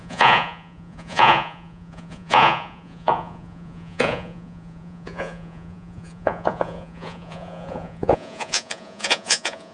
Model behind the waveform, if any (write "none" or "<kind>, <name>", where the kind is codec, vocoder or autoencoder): vocoder, Vocos